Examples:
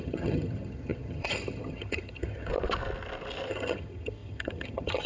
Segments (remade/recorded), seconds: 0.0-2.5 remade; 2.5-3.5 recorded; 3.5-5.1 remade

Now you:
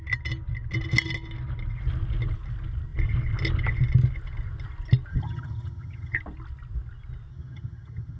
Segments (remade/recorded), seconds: 0.0-5.1 recorded; 5.1-6.2 remade; 6.2-7.3 recorded; 7.3-8.2 remade

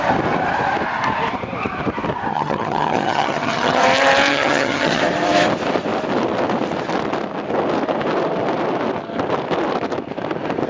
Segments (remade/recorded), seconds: 0.0-2.3 recorded; 2.3-3.8 remade; 3.8-4.3 recorded; 4.3-5.0 remade; 5.0-10.7 recorded

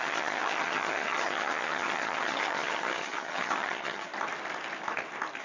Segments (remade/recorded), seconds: 0.0-4.1 remade; 4.1-5.4 recorded

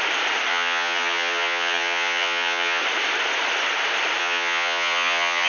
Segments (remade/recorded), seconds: 0.0-0.5 recorded; 0.5-2.8 remade; 2.8-4.2 recorded; 4.2-5.5 remade

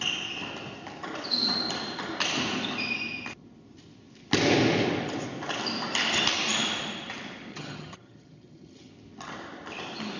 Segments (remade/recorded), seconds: 0.0-7.5 recorded; 7.5-8.9 remade; 8.9-10.2 recorded

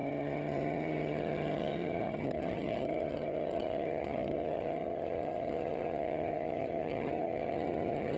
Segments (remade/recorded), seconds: 0.0-8.2 remade

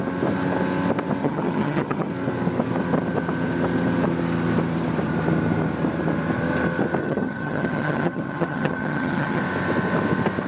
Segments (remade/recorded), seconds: 0.0-1.2 recorded; 1.2-2.1 remade; 2.1-7.0 recorded; 7.0-9.4 remade; 9.4-10.5 recorded